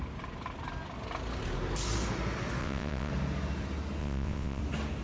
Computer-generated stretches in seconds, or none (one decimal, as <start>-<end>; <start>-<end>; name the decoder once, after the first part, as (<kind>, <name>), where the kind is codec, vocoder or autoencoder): 2.6-3.1 (vocoder, WaveNeXt); 4.0-4.6